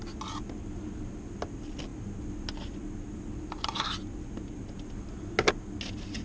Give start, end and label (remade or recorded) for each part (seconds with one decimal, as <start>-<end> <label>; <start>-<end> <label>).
0.0-6.2 recorded